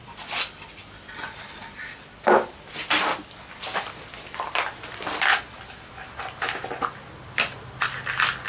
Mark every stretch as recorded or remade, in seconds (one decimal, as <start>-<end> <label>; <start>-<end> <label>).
0.0-8.5 recorded